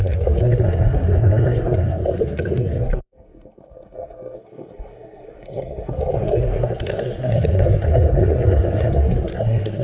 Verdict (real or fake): fake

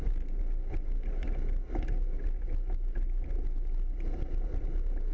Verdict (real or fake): real